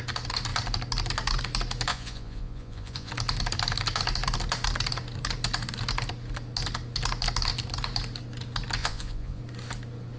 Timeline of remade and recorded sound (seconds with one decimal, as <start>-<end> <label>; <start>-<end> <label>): 0.0-1.9 recorded; 1.9-3.1 remade; 3.1-8.8 recorded; 8.8-9.4 remade; 9.4-10.2 recorded